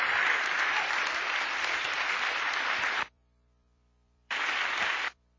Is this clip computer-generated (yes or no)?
yes